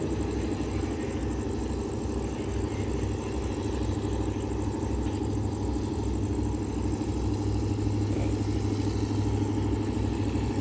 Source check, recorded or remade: recorded